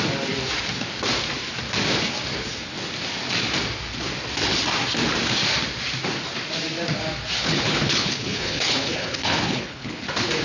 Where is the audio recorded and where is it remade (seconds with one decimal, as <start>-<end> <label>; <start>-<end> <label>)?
0.0-7.4 recorded; 7.4-10.0 remade; 10.0-10.4 recorded